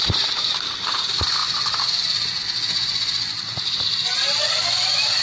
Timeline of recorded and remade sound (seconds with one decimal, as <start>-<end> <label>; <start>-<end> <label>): 0.0-1.4 recorded; 1.4-2.4 remade; 2.4-5.2 recorded